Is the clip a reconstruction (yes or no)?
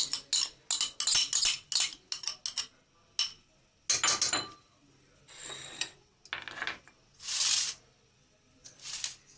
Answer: no